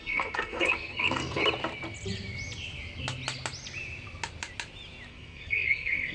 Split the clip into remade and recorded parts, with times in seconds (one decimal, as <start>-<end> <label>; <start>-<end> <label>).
0.0-1.4 remade; 1.4-5.1 recorded; 5.1-6.1 remade